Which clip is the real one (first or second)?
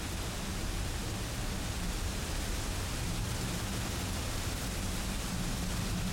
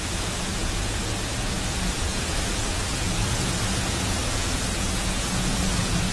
first